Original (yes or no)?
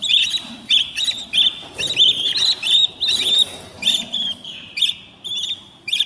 yes